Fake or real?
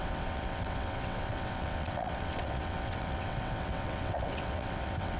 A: fake